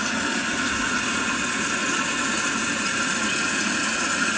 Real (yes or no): no